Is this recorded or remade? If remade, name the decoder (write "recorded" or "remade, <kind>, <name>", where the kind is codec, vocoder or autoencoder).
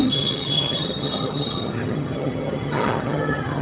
remade, vocoder, HiFi-GAN